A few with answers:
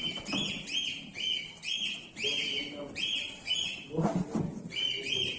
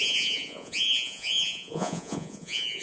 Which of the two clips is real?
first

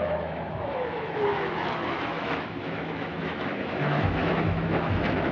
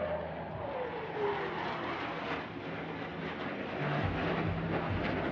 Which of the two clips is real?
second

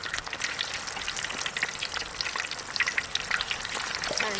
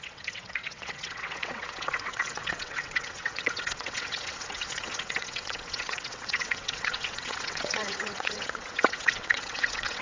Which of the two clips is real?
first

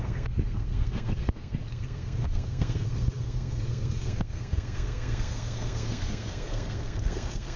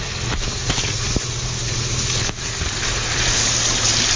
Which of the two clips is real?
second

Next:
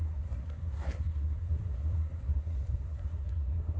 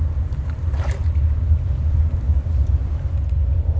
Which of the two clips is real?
second